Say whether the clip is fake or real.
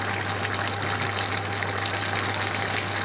real